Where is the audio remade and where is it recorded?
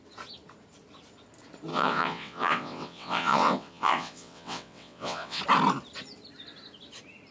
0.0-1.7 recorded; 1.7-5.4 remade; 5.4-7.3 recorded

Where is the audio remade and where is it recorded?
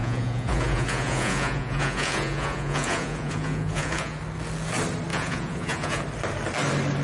0.0-4.2 remade; 4.2-5.1 recorded; 5.1-6.0 remade; 6.0-7.0 recorded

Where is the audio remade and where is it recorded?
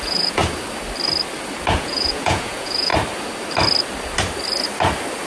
0.0-0.4 remade; 0.4-1.7 recorded; 1.7-2.9 remade; 2.9-5.3 recorded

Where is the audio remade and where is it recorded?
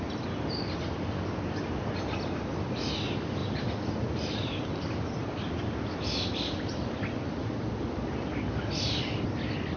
0.0-3.4 recorded; 3.4-8.5 remade; 8.5-9.8 recorded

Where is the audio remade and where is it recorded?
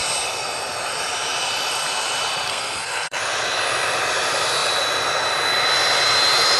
0.0-2.5 recorded; 2.5-3.2 remade; 3.2-6.6 recorded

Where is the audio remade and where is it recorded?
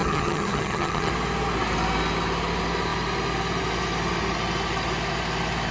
0.0-1.1 remade; 1.1-5.7 recorded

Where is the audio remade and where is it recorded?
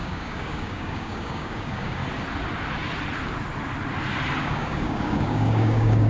0.0-2.0 remade; 2.0-4.4 recorded; 4.4-6.1 remade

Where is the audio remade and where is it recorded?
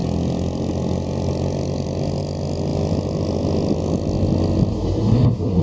0.0-4.7 recorded; 4.7-5.6 remade